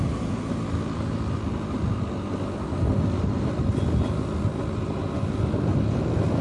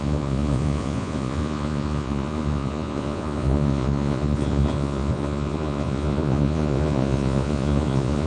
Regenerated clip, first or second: second